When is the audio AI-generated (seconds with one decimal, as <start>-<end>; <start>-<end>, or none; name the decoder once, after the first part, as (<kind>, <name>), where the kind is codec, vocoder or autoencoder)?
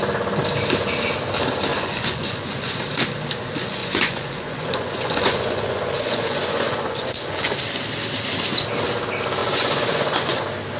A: 1.7-2.8 (vocoder, Vocos); 3.8-7.5; 9.4-10.4